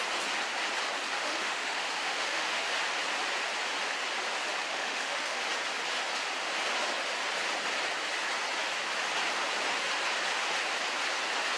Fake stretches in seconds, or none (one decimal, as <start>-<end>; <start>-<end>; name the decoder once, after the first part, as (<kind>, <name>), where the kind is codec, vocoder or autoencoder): 1.2-2.7 (autoencoder, DAC-VAE); 4.6-5.4